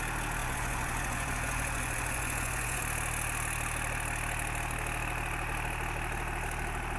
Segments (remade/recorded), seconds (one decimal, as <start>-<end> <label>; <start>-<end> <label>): 0.0-0.4 recorded; 0.4-2.8 remade; 2.8-7.0 recorded